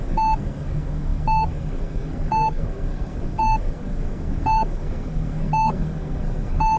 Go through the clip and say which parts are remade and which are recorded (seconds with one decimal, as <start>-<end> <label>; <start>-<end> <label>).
0.0-6.8 remade